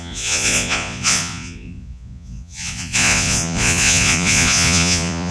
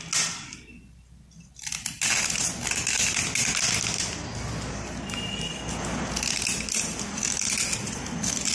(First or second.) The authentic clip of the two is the second